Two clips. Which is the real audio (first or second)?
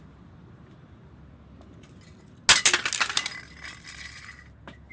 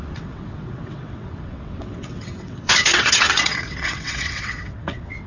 first